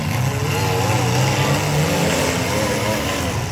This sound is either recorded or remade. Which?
recorded